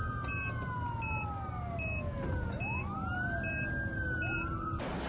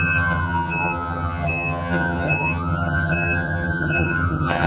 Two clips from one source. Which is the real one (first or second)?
first